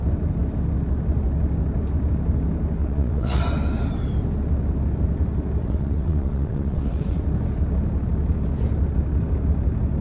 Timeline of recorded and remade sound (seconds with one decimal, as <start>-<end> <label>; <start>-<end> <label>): 0.0-2.8 recorded; 2.8-3.4 remade; 3.4-5.6 recorded; 5.6-7.2 remade; 7.2-10.0 recorded